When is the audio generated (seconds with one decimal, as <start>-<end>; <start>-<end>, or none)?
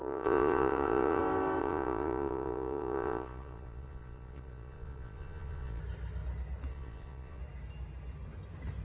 0.0-1.2; 1.6-5.8; 6.7-7.4